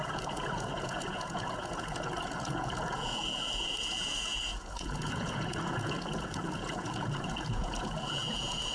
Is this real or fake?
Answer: fake